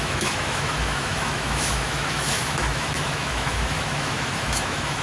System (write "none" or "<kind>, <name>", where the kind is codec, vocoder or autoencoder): autoencoder, DAC-VAE